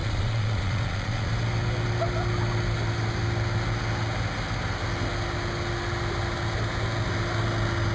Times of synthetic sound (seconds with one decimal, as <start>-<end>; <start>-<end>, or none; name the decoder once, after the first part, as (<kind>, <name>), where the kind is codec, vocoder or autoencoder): 0.0-1.3 (vocoder, Vocos)